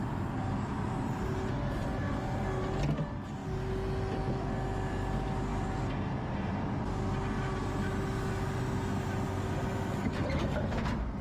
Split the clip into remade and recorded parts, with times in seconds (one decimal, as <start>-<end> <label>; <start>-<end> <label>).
0.0-11.2 recorded